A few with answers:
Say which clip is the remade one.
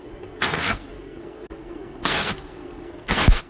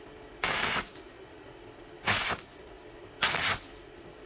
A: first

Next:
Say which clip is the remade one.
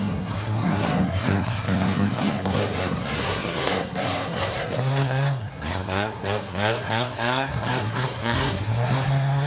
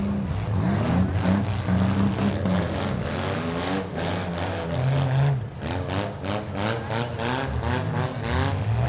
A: first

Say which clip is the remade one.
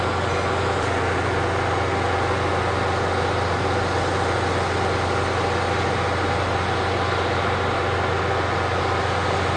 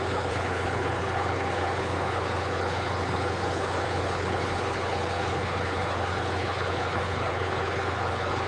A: second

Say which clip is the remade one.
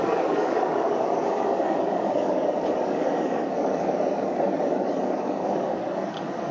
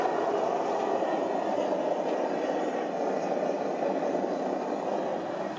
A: first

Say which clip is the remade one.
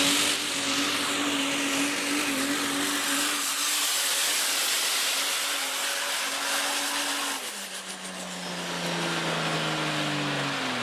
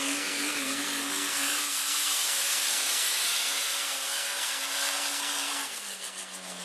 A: second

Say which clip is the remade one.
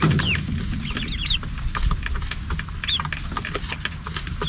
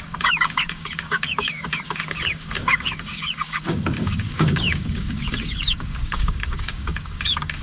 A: second